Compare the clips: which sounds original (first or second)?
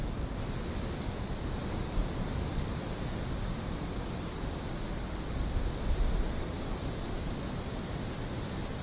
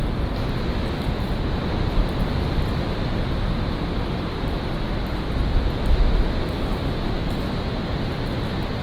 second